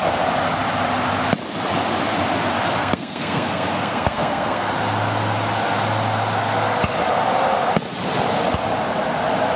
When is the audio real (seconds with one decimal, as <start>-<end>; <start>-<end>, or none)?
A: 0.0-2.8; 4.7-9.6